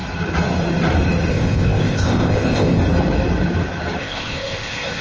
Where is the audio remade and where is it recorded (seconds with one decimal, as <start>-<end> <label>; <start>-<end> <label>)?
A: 0.0-1.3 recorded; 1.3-2.8 remade; 2.8-4.0 recorded; 4.0-5.0 remade